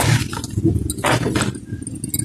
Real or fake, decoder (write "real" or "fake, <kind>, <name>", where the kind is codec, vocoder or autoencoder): real